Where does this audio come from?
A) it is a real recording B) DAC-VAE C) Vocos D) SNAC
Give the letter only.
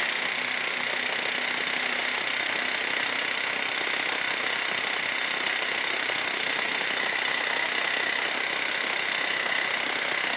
A